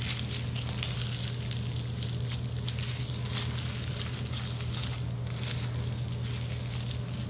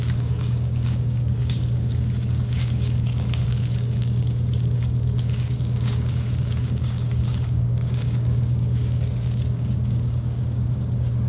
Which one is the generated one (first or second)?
second